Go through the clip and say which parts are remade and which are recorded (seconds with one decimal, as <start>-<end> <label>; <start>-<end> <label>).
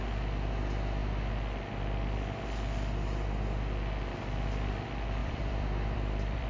0.0-5.2 recorded; 5.2-6.5 remade